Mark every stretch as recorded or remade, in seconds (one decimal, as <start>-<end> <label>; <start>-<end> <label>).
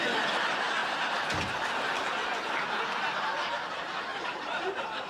0.0-0.8 recorded; 0.8-1.9 remade; 1.9-4.1 recorded; 4.1-5.1 remade